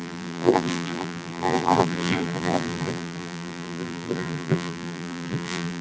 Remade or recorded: remade